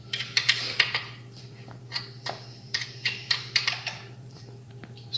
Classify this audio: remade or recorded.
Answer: remade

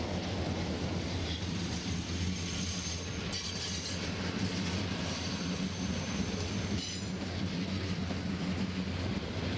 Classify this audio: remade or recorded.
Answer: recorded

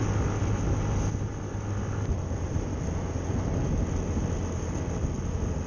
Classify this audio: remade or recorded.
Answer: recorded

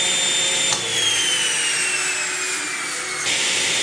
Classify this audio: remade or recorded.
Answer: recorded